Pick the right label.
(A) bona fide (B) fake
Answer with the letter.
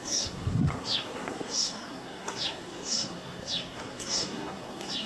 B